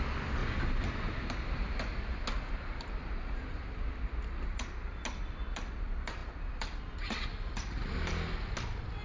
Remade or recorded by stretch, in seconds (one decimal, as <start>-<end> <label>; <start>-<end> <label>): 0.0-9.0 recorded